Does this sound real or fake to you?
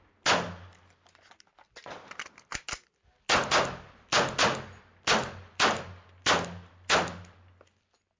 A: real